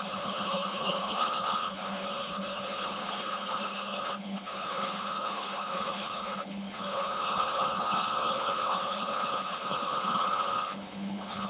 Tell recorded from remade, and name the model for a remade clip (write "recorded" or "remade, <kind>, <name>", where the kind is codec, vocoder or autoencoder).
remade, codec, HILCodec